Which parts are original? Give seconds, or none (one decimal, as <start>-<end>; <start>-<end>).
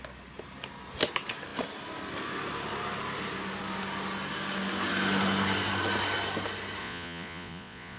0.0-6.8